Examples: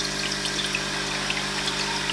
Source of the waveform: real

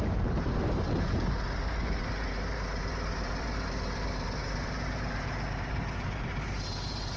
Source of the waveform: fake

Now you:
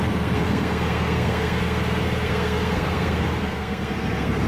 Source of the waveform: fake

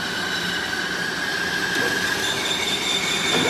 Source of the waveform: real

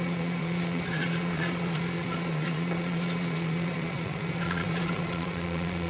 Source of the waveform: fake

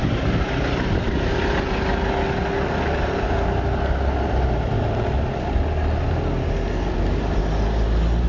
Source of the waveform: real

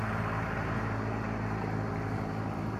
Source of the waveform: real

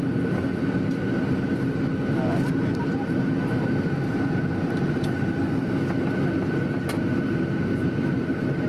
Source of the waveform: real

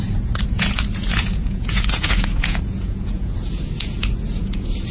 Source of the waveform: fake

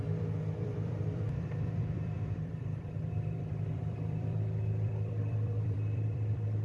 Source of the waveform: fake